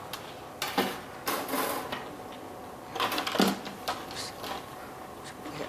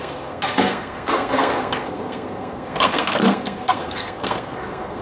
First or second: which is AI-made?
second